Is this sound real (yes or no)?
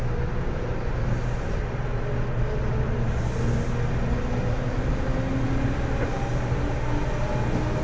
yes